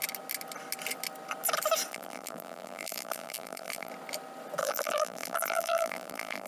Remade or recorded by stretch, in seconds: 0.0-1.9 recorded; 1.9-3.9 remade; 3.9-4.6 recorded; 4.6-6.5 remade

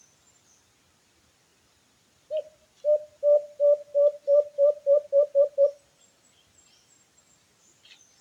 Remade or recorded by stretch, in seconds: 0.0-8.2 recorded

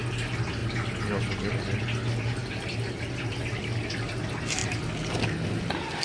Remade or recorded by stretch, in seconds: 0.0-4.6 recorded; 4.6-5.2 remade; 5.2-6.0 recorded

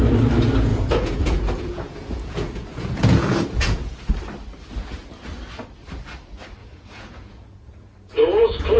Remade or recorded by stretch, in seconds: 0.0-0.7 recorded; 0.7-4.1 remade; 4.1-6.6 recorded; 6.6-8.8 remade

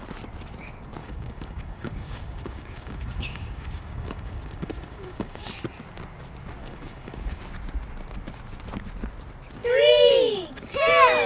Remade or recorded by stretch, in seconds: 0.0-1.0 recorded; 1.0-5.5 remade; 5.5-6.6 recorded; 6.6-7.4 remade; 7.4-9.6 recorded; 9.6-11.3 remade